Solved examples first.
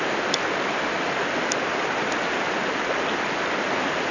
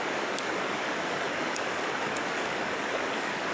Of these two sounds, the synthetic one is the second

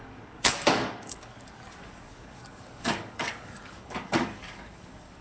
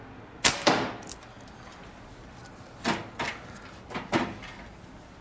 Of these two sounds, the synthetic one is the first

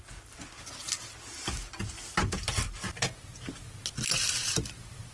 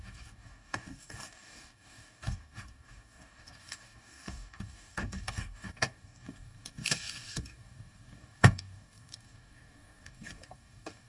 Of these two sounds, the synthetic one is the second